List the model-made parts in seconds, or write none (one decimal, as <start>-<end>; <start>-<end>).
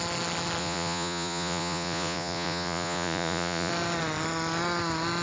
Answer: 0.6-3.7